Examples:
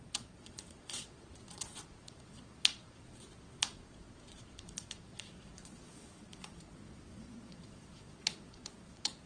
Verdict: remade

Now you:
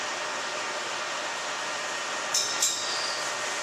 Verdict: recorded